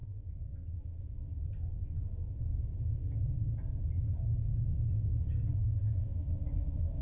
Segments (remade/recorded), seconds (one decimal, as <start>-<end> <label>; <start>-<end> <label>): 0.0-0.8 recorded; 0.8-1.3 remade; 1.3-5.5 recorded; 5.5-7.0 remade